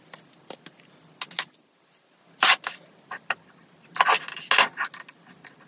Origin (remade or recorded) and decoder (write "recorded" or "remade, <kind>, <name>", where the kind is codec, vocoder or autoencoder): recorded